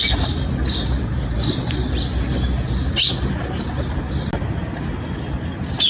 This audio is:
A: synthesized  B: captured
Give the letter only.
B